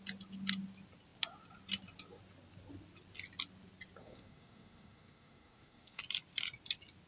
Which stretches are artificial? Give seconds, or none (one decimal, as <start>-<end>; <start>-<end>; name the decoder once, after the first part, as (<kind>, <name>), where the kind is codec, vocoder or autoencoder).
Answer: 4.0-6.0 (codec, SNAC)